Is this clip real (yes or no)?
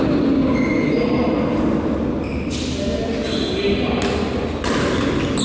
yes